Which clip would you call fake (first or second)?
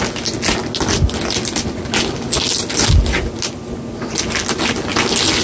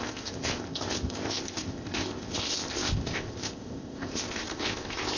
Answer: second